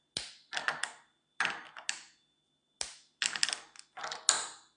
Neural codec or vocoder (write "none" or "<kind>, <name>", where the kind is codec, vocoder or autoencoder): none